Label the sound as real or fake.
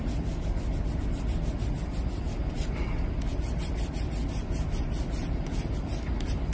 real